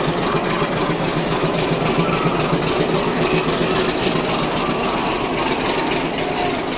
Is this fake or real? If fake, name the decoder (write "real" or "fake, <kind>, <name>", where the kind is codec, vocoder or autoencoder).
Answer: real